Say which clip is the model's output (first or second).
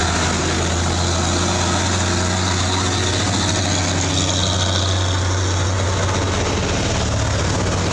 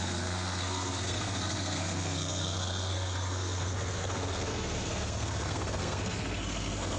second